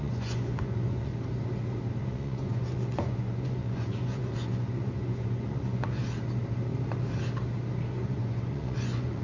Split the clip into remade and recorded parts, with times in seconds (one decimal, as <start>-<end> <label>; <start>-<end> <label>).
0.0-1.1 remade; 1.1-2.0 recorded; 2.0-6.0 remade; 6.0-7.9 recorded; 7.9-9.2 remade

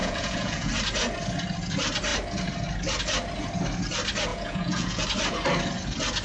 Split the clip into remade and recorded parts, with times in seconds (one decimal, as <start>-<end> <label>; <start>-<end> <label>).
0.0-0.7 remade; 0.7-4.3 recorded; 4.3-5.0 remade; 5.0-6.2 recorded

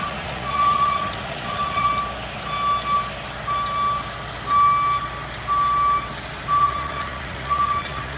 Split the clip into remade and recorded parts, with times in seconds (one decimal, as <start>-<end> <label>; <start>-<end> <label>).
0.0-1.9 remade; 1.9-6.6 recorded; 6.6-8.2 remade